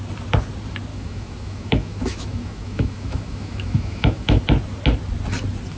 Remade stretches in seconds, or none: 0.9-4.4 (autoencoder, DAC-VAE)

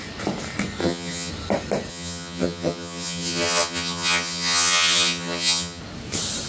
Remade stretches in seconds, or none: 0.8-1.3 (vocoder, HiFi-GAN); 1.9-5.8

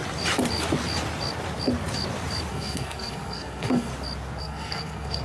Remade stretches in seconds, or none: 2.5-3.9 (codec, SNAC); 4.4-5.2

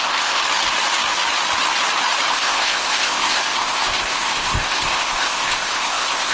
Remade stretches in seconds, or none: 0.0-0.4 (codec, ZipCodec); 2.3-6.3

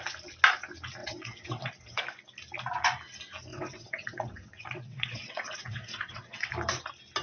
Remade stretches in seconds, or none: 1.0-2.0 (vocoder, WaveNeXt); 3.5-6.5